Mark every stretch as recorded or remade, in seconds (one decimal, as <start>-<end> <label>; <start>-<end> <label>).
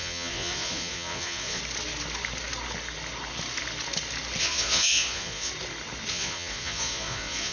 0.0-1.6 remade; 1.6-4.4 recorded; 4.4-5.5 remade; 5.5-6.1 recorded; 6.1-7.5 remade